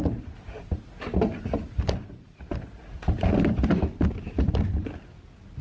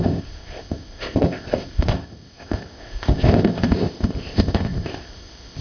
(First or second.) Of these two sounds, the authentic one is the first